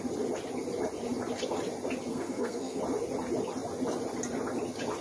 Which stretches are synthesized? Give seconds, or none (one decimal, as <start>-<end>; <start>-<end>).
2.1-2.8